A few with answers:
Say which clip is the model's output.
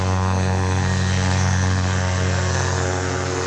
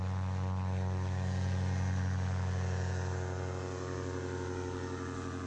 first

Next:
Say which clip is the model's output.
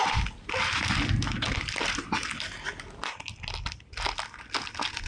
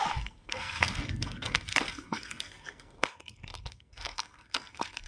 second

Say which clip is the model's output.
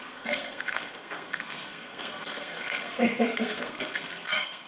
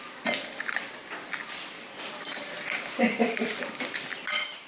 first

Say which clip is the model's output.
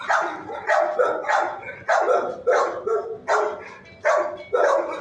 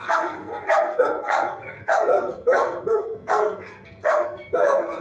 second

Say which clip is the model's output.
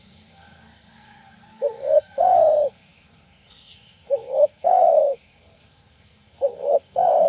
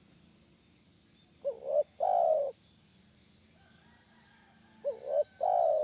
first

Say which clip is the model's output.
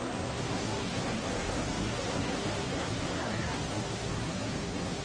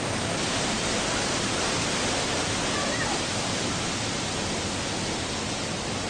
first